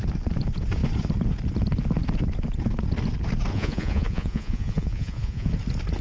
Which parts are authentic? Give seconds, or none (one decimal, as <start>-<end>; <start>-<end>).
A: 0.0-3.5; 5.5-6.0